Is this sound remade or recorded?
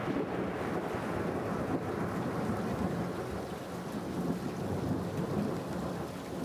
recorded